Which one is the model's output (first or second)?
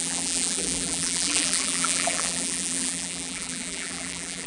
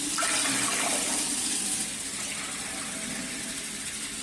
first